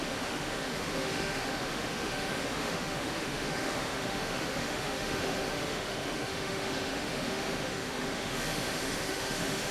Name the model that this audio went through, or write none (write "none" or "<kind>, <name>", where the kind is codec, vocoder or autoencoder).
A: autoencoder, DAC-VAE